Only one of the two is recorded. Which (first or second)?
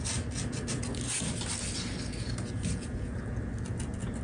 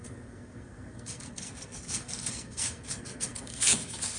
first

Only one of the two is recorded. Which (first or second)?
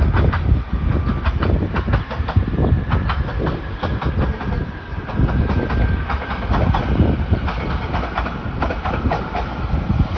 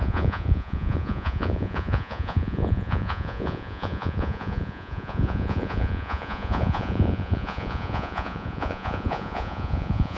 first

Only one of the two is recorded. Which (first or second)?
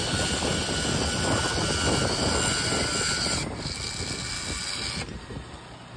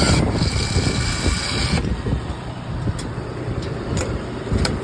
first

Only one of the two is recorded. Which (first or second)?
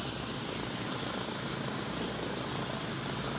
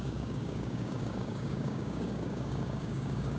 first